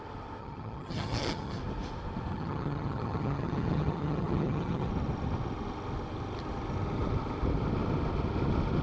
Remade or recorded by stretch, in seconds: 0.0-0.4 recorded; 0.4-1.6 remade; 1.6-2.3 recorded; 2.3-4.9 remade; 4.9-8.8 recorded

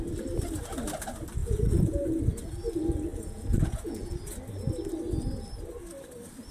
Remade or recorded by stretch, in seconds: 0.0-1.4 recorded; 1.4-2.2 remade; 2.2-3.1 recorded; 3.1-4.1 remade; 4.1-6.5 recorded

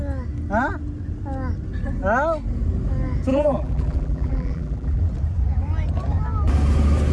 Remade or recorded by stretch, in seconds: 0.0-3.3 recorded; 3.3-5.0 remade; 5.0-7.1 recorded

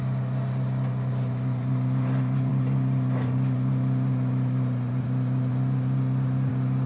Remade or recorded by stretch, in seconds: 0.0-6.9 recorded